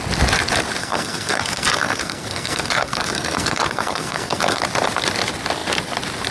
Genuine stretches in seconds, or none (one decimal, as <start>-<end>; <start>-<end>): 0.0-0.8; 4.6-6.3